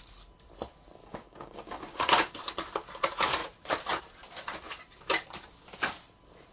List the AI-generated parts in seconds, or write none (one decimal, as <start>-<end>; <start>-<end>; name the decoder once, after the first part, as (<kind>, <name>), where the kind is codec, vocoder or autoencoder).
1.0-2.4 (codec, DAC)